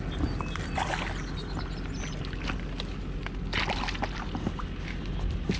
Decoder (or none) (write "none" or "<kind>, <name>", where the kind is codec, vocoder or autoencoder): none